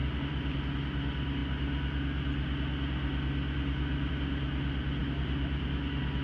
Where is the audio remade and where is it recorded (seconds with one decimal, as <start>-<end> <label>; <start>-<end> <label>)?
0.0-0.6 remade; 0.6-5.0 recorded; 5.0-5.8 remade; 5.8-6.2 recorded

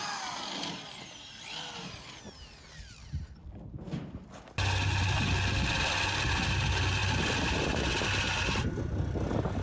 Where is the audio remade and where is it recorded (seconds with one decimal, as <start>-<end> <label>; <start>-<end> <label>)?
0.0-9.6 recorded

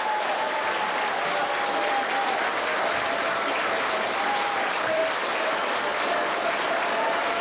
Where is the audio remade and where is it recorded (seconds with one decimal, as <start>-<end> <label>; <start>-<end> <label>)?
0.0-1.4 remade; 1.4-2.8 recorded; 2.8-5.0 remade; 5.0-6.5 recorded; 6.5-7.4 remade

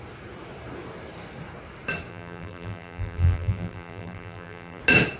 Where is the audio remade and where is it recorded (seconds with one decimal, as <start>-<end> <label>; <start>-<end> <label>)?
0.0-2.1 recorded; 2.1-4.8 remade; 4.8-5.2 recorded

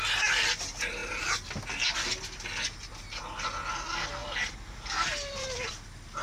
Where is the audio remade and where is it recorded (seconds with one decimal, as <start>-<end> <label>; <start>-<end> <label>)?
0.0-4.2 recorded; 4.2-5.7 remade; 5.7-6.2 recorded

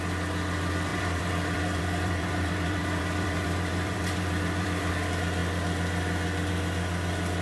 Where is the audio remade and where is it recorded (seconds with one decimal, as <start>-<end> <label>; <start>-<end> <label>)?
0.0-0.9 recorded; 0.9-4.9 remade; 4.9-7.4 recorded

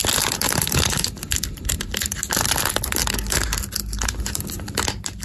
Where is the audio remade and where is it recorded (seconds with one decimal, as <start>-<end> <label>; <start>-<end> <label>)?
0.0-5.2 recorded

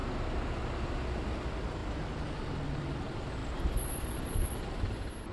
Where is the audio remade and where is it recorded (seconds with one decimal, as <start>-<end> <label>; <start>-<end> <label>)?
0.0-3.4 recorded; 3.4-4.6 remade; 4.6-5.3 recorded